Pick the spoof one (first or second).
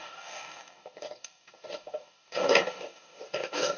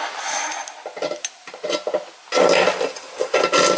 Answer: first